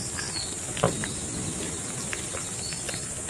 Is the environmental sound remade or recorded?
recorded